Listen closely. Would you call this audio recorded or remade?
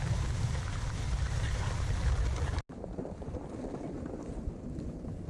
recorded